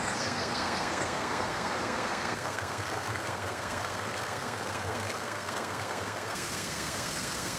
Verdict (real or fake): fake